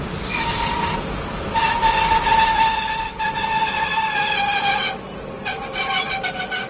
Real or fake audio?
real